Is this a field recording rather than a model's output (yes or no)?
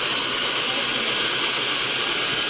yes